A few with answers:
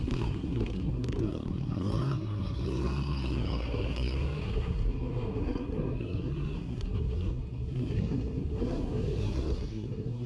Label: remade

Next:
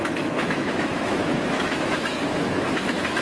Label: remade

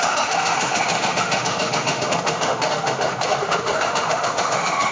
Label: remade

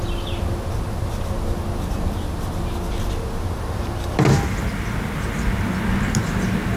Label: recorded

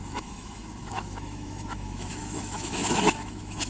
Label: remade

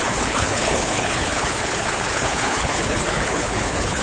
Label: remade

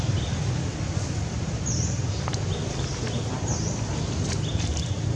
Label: remade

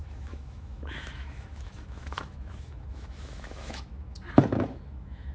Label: remade